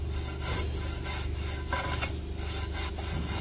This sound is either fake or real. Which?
real